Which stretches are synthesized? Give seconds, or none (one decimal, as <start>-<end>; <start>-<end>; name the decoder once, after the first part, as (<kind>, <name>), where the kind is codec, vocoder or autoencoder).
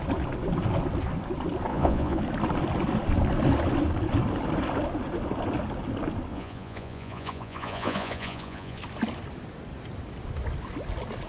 1.7-2.2 (vocoder, Vocos); 6.3-8.8